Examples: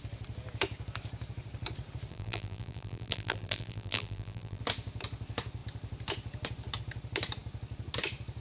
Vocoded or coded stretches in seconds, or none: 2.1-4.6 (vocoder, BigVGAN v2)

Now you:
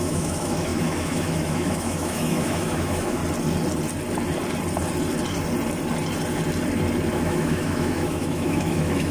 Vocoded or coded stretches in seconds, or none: 0.0-3.2 (autoencoder, DAC-VAE); 7.1-9.1

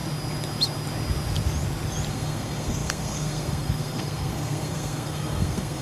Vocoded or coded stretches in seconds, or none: 2.1-5.8 (codec, SNAC)